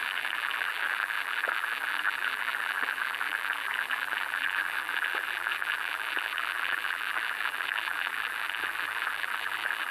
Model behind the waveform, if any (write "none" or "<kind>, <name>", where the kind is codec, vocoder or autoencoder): vocoder, BigVGAN v2